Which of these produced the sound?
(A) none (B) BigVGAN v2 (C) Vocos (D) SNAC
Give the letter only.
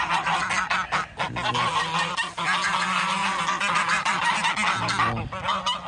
A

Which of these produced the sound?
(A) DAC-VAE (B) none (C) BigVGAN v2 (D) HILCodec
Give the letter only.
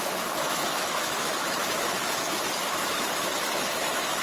A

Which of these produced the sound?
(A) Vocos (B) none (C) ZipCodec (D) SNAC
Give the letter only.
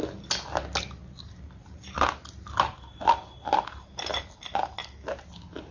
B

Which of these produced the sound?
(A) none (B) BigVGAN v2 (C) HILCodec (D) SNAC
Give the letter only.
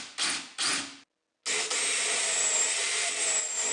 A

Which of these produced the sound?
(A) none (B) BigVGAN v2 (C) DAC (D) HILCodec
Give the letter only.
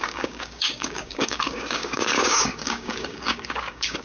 C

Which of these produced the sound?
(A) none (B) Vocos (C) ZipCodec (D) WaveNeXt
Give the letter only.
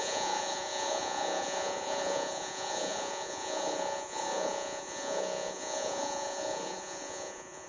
B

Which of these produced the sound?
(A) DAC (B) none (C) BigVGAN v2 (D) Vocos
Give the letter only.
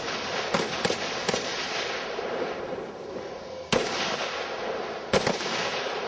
B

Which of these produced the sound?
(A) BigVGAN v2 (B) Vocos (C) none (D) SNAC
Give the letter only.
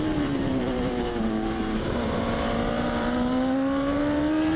A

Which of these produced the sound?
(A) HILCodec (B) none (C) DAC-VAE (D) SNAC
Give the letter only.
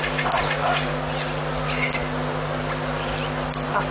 B